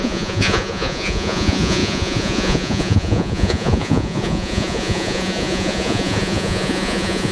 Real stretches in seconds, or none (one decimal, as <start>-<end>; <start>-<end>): none